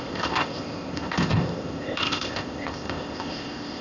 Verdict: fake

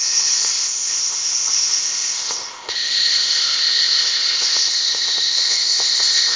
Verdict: fake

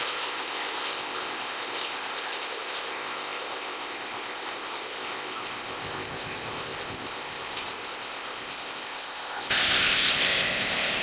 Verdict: fake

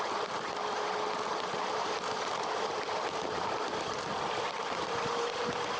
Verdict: real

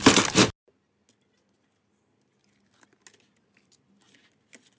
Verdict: real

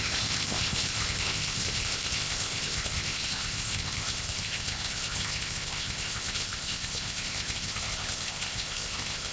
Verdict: fake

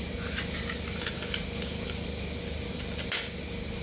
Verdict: real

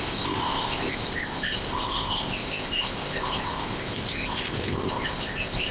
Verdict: fake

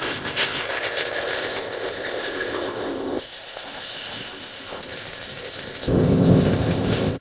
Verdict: fake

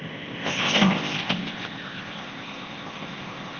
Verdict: fake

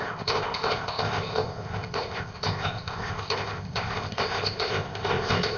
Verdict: fake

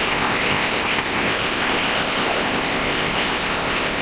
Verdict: fake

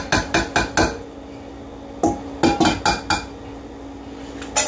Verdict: real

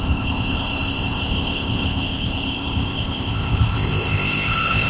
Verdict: fake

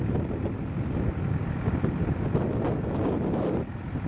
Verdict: real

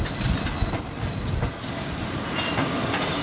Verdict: real